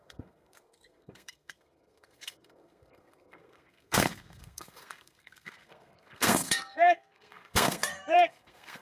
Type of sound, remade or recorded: remade